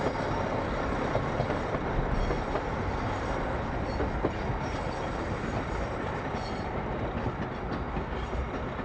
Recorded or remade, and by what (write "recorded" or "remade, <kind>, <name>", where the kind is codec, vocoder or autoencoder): recorded